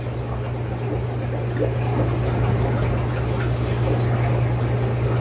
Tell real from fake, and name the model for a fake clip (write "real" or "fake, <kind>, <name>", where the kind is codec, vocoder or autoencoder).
real